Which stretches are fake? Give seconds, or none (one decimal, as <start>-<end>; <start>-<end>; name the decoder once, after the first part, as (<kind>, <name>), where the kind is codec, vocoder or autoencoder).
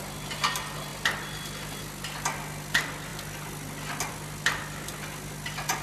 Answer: none